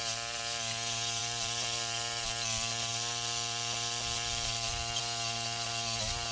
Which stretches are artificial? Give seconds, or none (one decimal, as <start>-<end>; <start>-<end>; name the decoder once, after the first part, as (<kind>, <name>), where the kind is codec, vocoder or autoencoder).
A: 1.2-5.0 (vocoder, BigVGAN v2)